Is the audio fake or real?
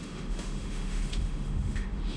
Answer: fake